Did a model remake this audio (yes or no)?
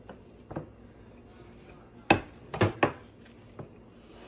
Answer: no